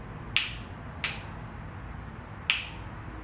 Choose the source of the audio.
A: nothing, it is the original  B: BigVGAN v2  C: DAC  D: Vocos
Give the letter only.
A